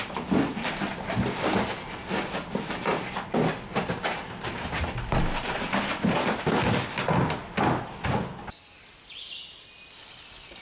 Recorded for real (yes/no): yes